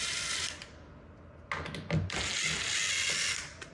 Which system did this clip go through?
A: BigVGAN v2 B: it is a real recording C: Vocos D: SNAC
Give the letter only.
B